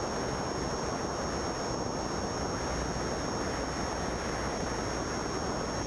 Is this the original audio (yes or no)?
yes